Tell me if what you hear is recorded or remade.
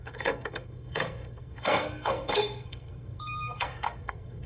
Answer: remade